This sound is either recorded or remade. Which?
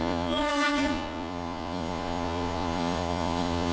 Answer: remade